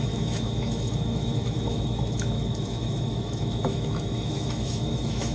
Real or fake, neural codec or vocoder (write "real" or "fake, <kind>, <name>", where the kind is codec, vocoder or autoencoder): fake, autoencoder, DAC-VAE